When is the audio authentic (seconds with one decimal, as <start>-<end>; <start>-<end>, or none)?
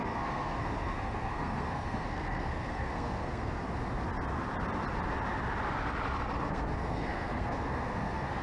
3.6-6.5